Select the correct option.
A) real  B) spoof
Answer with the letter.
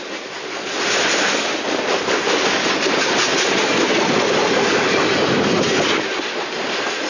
A